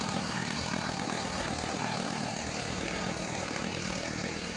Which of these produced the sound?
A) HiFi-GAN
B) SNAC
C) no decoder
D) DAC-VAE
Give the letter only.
B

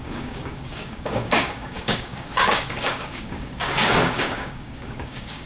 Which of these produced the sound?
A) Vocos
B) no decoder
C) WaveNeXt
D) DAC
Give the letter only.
D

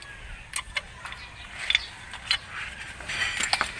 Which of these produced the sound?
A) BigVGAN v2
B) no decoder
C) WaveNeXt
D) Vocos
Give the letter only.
B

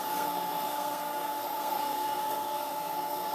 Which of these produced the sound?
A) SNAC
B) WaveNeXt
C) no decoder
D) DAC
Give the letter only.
A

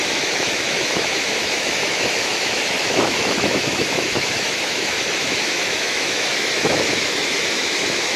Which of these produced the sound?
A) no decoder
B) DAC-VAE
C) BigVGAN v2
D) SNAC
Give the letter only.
B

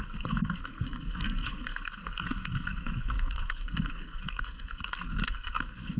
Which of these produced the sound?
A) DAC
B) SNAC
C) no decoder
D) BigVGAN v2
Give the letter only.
B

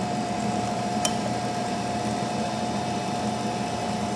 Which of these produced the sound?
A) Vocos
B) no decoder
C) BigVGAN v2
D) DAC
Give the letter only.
C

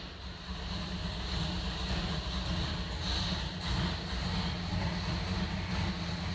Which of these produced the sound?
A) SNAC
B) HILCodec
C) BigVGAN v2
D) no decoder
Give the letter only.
D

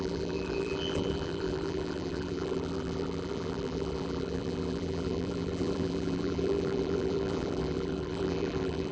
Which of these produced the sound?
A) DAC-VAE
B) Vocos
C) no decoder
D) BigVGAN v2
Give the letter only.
D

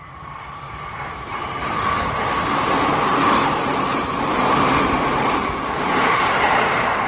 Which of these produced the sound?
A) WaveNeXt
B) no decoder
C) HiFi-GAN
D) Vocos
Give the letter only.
B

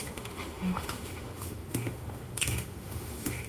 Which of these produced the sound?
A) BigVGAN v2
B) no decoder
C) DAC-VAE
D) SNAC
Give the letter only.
C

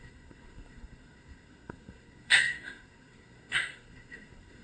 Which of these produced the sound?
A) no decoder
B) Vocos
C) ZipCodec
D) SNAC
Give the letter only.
D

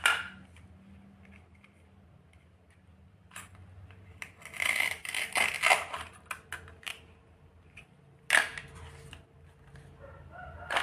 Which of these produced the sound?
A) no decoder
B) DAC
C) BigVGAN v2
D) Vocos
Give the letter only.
A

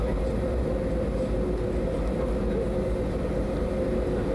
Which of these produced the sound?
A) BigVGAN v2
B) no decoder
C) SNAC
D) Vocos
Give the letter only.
B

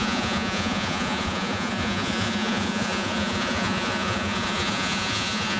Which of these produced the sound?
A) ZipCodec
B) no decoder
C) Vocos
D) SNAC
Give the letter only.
C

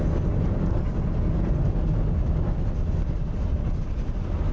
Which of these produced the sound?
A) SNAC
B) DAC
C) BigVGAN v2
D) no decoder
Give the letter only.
D